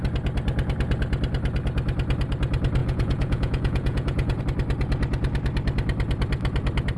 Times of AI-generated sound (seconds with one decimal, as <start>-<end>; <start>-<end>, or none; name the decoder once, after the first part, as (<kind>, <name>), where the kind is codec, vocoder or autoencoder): 2.8-4.4 (vocoder, Vocos)